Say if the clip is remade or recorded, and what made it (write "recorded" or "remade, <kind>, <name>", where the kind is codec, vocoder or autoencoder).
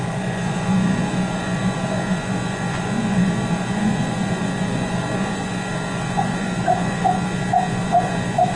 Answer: remade, vocoder, Vocos